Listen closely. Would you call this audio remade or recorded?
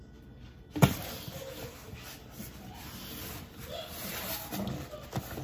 recorded